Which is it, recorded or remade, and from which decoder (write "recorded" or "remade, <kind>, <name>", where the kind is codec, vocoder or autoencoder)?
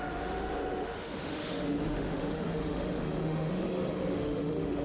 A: remade, autoencoder, DAC-VAE